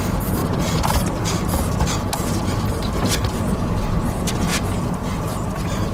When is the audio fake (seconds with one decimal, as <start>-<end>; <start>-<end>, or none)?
4.5-5.2